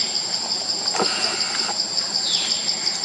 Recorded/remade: recorded